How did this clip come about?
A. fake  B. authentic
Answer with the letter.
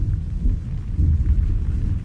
B